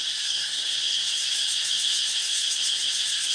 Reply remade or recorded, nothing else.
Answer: remade